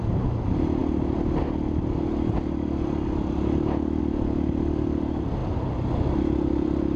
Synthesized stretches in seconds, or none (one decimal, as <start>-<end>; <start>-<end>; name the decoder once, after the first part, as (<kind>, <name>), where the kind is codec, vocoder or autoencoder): none